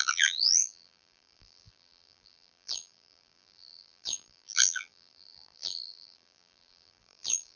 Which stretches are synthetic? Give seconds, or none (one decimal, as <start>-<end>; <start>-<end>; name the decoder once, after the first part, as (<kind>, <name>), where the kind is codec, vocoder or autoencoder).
0.0-7.6 (vocoder, BigVGAN v2)